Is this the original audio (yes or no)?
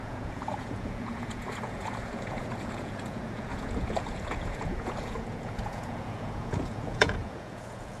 no